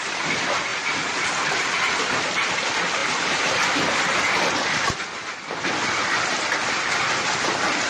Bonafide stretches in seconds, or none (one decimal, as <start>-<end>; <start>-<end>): 0.0-0.7; 1.7-7.9